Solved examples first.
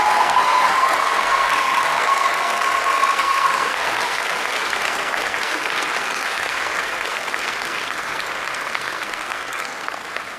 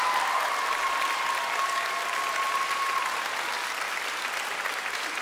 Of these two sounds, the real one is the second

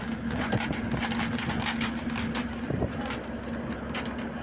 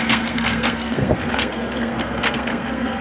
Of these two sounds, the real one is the first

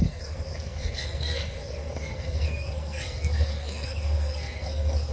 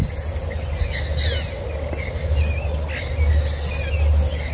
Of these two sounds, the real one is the second